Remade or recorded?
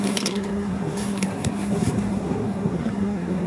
remade